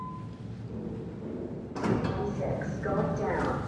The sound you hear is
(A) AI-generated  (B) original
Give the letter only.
B